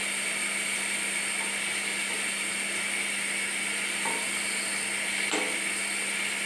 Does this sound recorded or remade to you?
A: recorded